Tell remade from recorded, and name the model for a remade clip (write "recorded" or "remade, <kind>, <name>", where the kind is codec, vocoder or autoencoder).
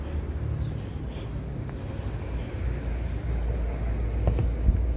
recorded